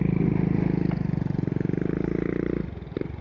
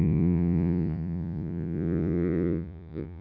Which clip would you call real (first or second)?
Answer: first